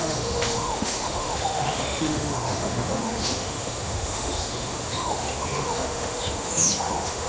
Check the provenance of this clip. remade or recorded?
remade